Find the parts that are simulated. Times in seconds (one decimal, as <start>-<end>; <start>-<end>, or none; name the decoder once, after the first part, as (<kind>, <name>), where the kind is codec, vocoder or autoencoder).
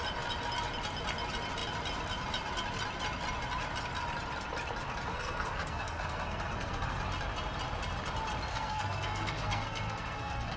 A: 5.1-7.0 (codec, SNAC); 8.5-10.6